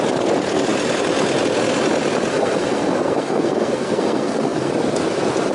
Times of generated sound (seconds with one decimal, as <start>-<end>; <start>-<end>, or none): 2.3-4.7